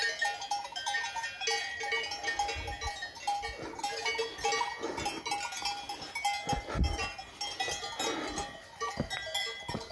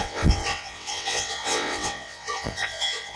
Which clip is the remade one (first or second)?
second